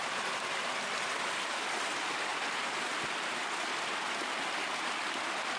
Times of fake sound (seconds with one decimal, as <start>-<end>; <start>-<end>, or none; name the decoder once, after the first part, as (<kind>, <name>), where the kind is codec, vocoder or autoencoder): none